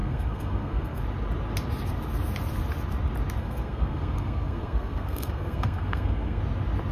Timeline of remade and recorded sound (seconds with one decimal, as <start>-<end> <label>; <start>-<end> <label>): 0.0-1.0 remade; 1.0-3.4 recorded; 3.4-6.4 remade; 6.4-6.9 recorded